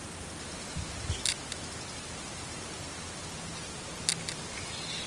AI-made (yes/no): no